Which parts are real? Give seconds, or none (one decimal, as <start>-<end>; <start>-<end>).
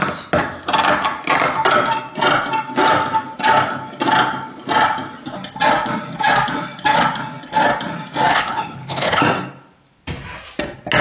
0.0-8.3; 9.2-11.0